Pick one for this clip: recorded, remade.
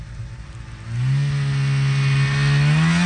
recorded